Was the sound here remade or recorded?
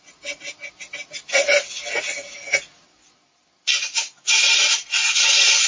recorded